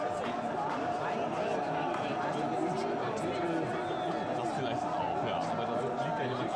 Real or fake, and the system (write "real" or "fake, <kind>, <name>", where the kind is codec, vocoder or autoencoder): real